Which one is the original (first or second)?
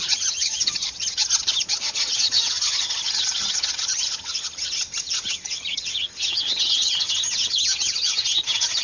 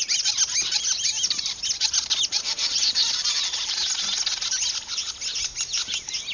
second